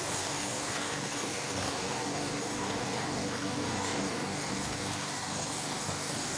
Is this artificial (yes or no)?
yes